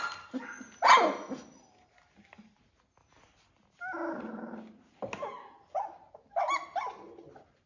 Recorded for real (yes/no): yes